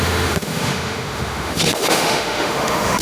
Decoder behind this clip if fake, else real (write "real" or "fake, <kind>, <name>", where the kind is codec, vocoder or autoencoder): fake, autoencoder, DAC-VAE